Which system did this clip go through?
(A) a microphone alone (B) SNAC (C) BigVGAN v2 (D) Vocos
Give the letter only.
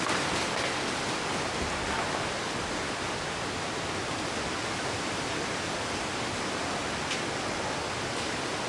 A